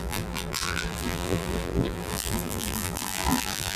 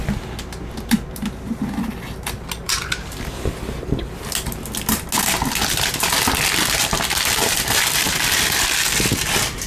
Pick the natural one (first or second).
second